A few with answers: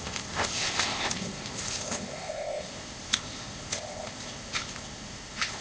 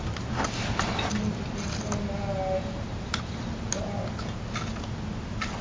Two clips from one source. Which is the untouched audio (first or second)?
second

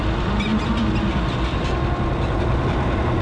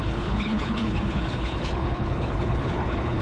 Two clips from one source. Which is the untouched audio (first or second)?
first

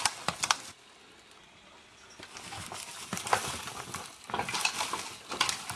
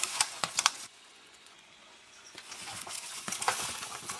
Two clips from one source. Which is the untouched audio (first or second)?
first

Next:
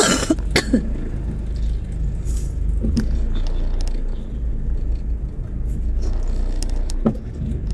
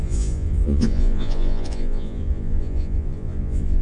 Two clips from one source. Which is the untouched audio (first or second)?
first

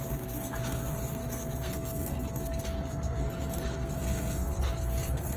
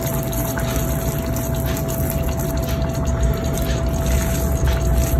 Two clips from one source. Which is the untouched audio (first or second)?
second